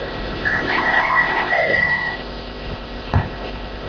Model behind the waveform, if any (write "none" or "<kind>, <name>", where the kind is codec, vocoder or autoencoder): codec, ZipCodec